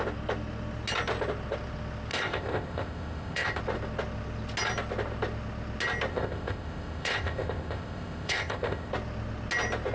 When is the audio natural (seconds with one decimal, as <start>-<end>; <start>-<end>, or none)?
0.0-2.1; 3.6-6.1; 8.9-9.9